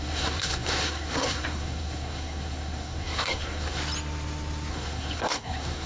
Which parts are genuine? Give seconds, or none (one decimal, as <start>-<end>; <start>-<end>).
3.8-4.7